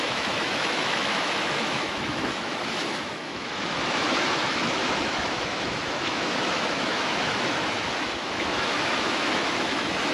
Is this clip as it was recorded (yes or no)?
no